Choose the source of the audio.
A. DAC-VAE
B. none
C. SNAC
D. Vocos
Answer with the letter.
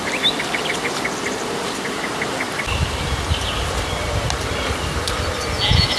B